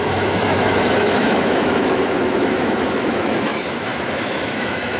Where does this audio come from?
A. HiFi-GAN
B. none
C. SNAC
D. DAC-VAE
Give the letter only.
D